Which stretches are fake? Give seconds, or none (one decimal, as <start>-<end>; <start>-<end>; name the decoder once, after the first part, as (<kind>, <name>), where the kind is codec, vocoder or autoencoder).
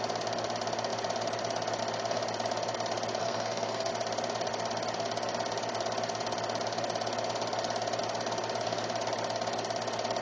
3.2-3.9 (codec, SNAC)